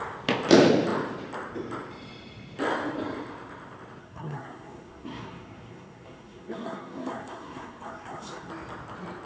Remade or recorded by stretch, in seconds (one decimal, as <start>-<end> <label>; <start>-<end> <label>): 0.0-4.0 recorded; 4.0-8.5 remade; 8.5-9.3 recorded